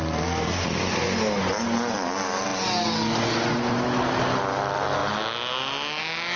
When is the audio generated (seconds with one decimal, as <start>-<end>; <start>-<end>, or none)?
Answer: none